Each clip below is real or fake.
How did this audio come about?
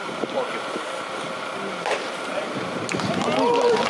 real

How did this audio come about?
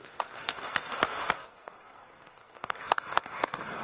fake